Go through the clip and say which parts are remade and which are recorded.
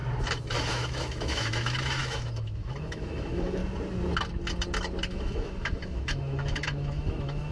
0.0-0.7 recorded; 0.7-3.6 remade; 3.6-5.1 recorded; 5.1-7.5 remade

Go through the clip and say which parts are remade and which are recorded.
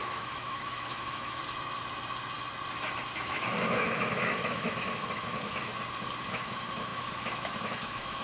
0.0-1.4 remade; 1.4-3.2 recorded; 3.2-5.7 remade; 5.7-6.3 recorded; 6.3-8.2 remade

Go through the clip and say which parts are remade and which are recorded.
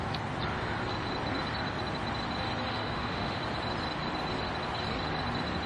0.0-2.7 recorded; 2.7-3.4 remade; 3.4-5.7 recorded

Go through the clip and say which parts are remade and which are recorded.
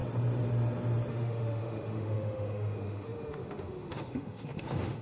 0.0-1.1 recorded; 1.1-5.0 remade